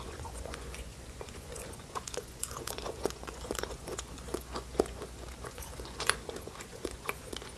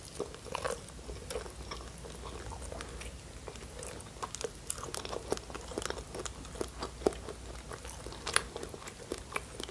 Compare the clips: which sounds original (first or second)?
second